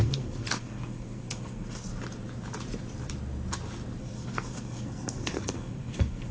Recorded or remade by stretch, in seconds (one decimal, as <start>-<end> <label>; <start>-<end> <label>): 0.0-1.9 remade; 1.9-4.0 recorded; 4.0-6.3 remade